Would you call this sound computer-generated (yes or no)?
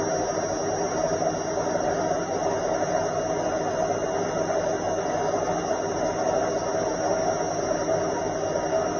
no